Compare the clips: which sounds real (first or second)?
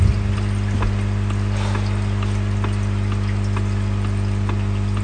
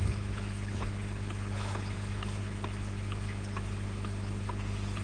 first